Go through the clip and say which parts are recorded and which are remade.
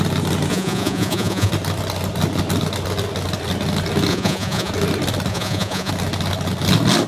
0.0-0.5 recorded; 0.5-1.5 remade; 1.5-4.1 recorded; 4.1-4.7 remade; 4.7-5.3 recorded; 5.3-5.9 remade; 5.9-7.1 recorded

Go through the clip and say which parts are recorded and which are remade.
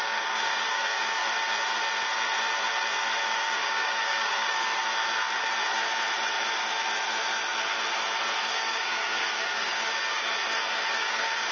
0.0-1.2 remade; 1.2-3.2 recorded; 3.2-4.8 remade; 4.8-8.4 recorded; 8.4-10.3 remade; 10.3-10.9 recorded; 10.9-11.5 remade